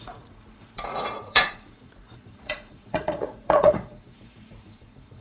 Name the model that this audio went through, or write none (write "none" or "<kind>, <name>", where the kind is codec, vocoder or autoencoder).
vocoder, Vocos